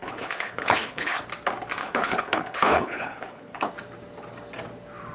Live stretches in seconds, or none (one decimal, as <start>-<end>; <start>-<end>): 1.2-1.8; 3.7-5.1